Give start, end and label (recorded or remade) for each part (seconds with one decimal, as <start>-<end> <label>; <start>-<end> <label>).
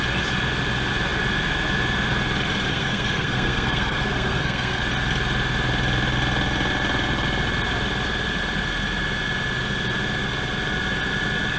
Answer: 0.0-2.7 recorded; 2.7-4.8 remade; 4.8-11.6 recorded